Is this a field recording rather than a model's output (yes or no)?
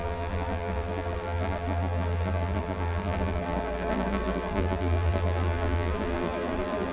no